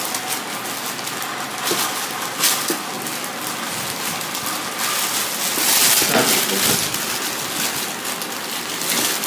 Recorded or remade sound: recorded